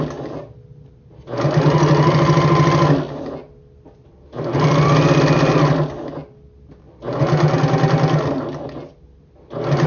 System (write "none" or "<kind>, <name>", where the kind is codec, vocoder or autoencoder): none